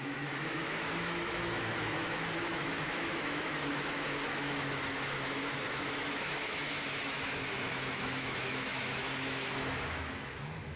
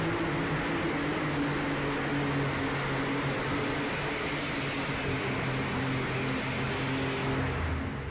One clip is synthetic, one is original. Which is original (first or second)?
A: second